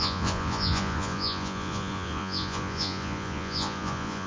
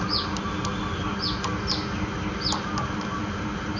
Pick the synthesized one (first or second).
first